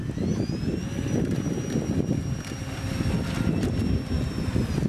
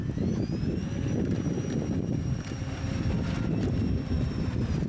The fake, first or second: second